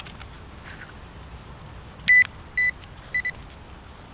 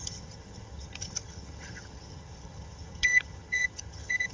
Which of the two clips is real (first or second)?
first